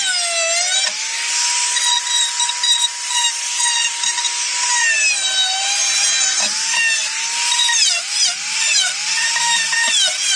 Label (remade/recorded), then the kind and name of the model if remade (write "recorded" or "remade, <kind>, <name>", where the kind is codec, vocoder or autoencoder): recorded